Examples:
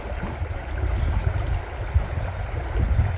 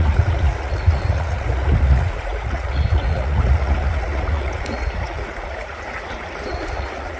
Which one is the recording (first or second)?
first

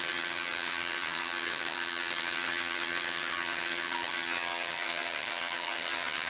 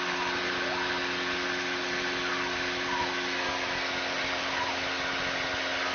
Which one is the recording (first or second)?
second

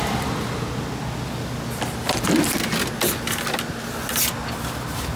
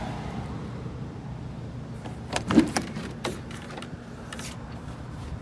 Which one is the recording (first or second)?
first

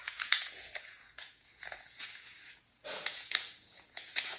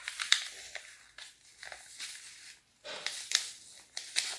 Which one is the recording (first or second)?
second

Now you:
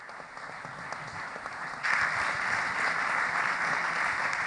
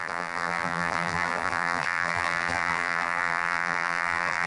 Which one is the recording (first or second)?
first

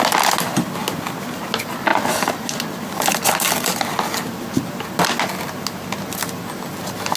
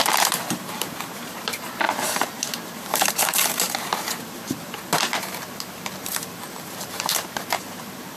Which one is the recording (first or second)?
first